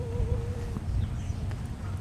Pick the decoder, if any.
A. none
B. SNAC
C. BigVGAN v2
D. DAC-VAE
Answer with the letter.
C